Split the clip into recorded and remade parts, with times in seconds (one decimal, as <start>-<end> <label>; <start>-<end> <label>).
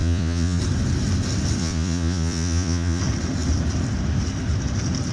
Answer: 0.0-0.6 remade; 0.6-1.6 recorded; 1.6-3.0 remade; 3.0-5.1 recorded